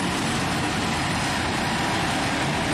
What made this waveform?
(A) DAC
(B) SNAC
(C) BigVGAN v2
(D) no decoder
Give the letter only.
D